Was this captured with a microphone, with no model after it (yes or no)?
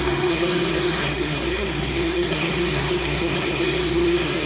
no